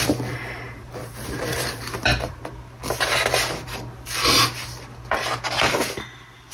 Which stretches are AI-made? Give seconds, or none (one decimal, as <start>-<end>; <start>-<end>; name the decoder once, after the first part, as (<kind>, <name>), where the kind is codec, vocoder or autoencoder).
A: 0.8-2.4 (vocoder, BigVGAN v2)